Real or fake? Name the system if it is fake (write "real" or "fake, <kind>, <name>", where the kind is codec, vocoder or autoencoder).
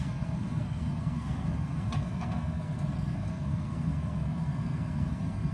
fake, codec, SNAC